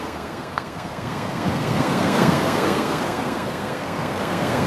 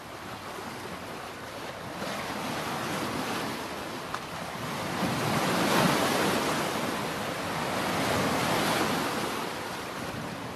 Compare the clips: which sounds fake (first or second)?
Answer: first